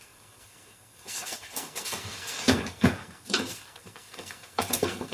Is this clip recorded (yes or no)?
no